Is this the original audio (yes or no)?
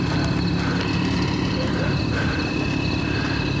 yes